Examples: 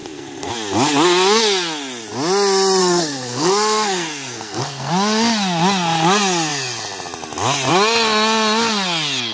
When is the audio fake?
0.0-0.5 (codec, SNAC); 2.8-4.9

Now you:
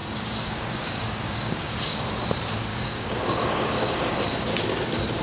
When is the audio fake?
0.0-2.0 (codec, DAC); 2.7-4.1

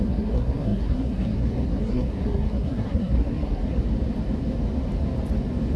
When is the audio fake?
0.0-3.6 (codec, SNAC)

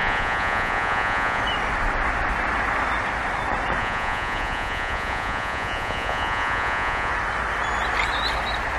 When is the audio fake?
0.0-1.4 (vocoder, Vocos); 3.8-7.1

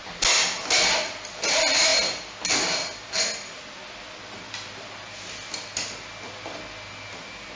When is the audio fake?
none

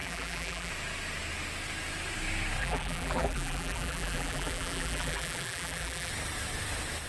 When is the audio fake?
0.0-0.7 (vocoder, BigVGAN v2); 2.6-6.1

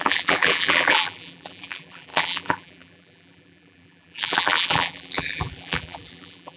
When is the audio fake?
0.0-6.6 (vocoder, BigVGAN v2)

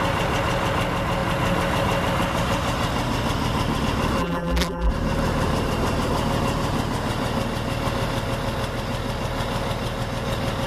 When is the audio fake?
4.2-4.9 (vocoder, BigVGAN v2)